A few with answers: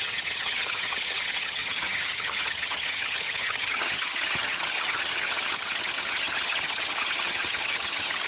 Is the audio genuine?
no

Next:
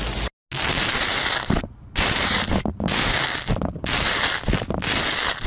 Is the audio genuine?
yes